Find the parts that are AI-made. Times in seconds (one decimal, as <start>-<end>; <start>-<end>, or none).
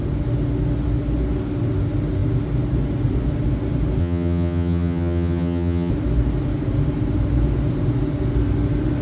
4.0-5.9